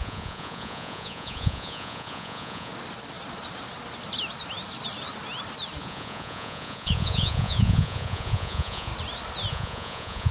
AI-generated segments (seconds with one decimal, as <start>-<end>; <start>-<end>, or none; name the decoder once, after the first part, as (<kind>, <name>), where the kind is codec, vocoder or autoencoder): 0.0-2.7 (vocoder, Vocos); 5.8-8.9; 9.5-10.3